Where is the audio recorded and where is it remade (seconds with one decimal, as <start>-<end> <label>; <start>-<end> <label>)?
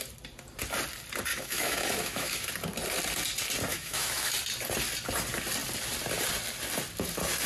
0.0-1.3 recorded; 1.3-2.5 remade; 2.5-3.7 recorded; 3.7-4.3 remade; 4.3-7.5 recorded